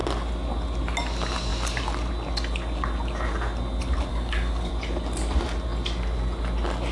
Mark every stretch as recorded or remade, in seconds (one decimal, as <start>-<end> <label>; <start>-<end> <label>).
0.0-4.1 recorded; 4.1-4.7 remade; 4.7-6.9 recorded